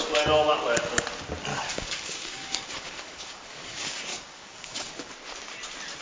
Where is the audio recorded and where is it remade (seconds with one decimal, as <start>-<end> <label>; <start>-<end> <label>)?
0.0-1.5 recorded; 1.5-5.1 remade; 5.1-6.0 recorded